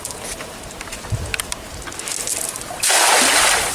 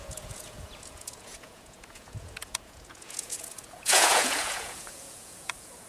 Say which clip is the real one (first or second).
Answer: first